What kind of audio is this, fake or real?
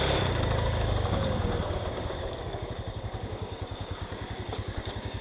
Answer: fake